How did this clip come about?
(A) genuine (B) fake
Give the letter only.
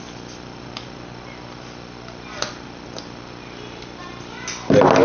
A